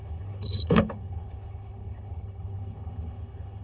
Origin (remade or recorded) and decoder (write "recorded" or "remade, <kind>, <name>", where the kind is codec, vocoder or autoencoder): remade, codec, HILCodec